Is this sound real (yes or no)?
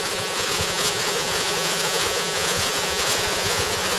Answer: no